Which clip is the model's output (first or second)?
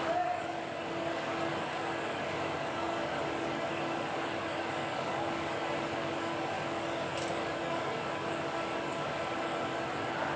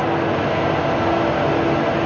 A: first